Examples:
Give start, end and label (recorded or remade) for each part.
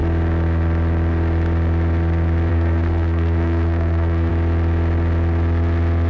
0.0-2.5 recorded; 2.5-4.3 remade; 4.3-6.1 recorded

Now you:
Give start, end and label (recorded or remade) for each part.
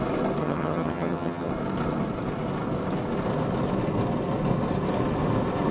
0.0-0.4 recorded; 0.4-1.5 remade; 1.5-5.7 recorded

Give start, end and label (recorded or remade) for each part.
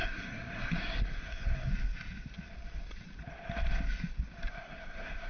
0.0-1.7 remade; 1.7-4.5 recorded; 4.5-5.3 remade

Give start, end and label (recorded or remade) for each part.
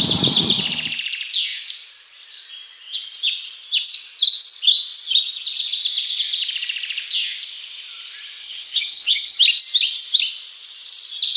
0.0-8.4 recorded; 8.4-9.4 remade; 9.4-11.4 recorded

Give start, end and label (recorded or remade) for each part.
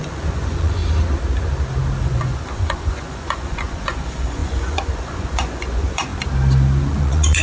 0.0-0.8 remade; 0.8-2.0 recorded; 2.0-6.1 remade; 6.1-6.9 recorded; 6.9-7.4 remade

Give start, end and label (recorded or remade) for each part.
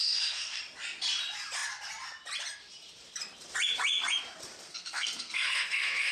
0.0-0.6 remade; 0.6-4.6 recorded; 4.6-6.1 remade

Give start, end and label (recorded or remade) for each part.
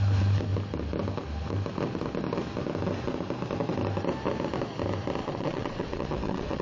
0.0-5.2 recorded; 5.2-6.6 remade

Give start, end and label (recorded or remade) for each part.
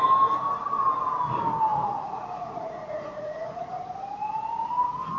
0.0-1.7 recorded; 1.7-3.8 remade; 3.8-5.2 recorded